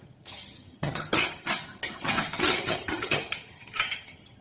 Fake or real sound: fake